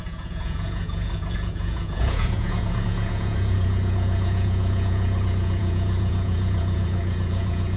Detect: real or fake fake